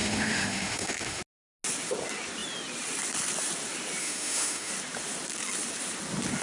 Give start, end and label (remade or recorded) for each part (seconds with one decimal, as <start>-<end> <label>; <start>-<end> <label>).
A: 0.0-1.2 remade; 1.2-4.0 recorded; 4.0-4.7 remade; 4.7-6.4 recorded